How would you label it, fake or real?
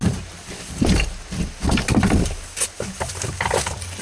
real